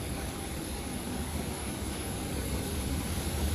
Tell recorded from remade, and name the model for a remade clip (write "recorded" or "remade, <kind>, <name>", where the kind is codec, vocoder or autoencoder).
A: remade, codec, DAC